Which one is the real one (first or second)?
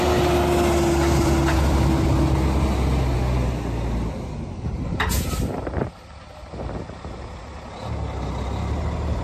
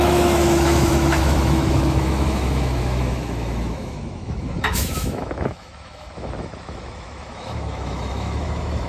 first